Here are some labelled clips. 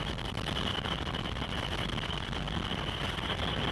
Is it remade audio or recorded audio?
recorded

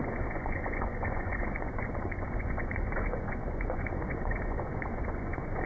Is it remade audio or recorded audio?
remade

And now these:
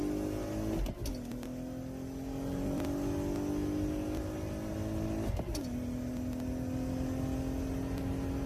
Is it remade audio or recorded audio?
recorded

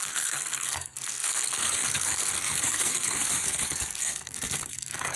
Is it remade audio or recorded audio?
remade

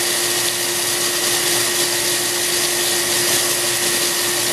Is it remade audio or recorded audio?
recorded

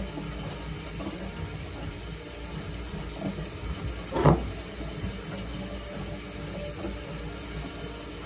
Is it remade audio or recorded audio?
recorded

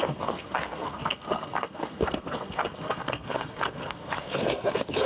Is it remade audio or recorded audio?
remade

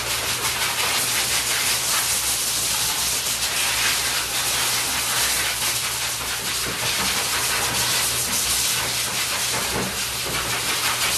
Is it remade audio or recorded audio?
recorded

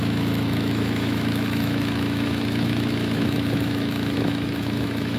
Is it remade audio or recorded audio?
remade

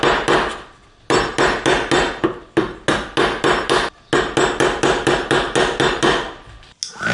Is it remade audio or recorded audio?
recorded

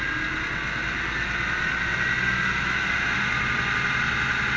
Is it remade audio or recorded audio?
recorded